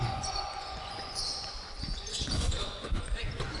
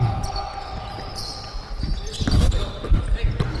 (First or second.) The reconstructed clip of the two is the first